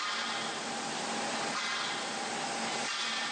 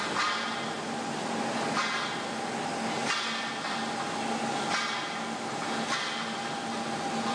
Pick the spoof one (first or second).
first